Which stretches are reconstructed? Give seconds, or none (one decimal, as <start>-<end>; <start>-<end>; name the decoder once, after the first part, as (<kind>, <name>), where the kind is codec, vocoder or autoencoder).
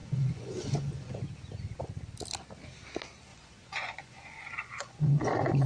0.0-1.2 (vocoder, Vocos); 3.3-5.7